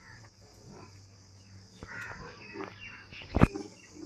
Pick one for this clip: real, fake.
fake